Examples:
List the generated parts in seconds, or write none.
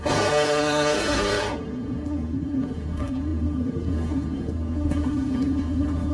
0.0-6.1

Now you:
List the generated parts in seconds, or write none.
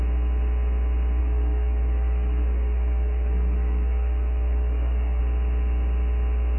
1.2-5.2